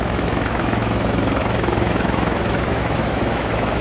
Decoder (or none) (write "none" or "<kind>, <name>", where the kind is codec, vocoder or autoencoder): autoencoder, DAC-VAE